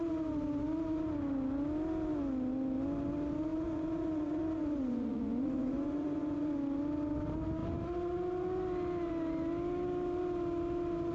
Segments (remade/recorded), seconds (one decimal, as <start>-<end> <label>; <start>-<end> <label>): 0.0-3.5 recorded; 3.5-6.5 remade; 6.5-11.1 recorded